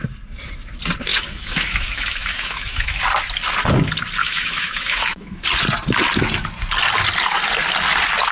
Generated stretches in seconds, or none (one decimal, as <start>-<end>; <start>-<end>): 1.1-3.0; 4.2-5.4